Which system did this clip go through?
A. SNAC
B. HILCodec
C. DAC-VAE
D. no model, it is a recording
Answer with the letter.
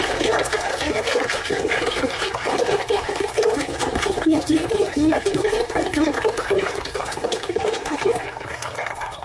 A